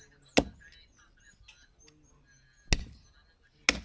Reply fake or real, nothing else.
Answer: real